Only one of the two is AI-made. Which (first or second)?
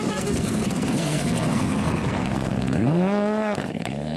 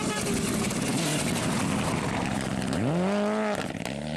first